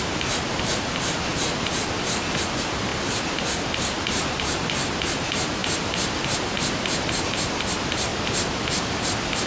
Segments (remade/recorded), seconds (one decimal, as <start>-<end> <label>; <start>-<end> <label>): 0.0-1.3 remade; 1.3-2.0 recorded; 2.0-8.1 remade; 8.1-8.8 recorded; 8.8-9.5 remade